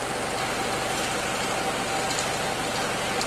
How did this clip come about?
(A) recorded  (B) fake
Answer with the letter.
A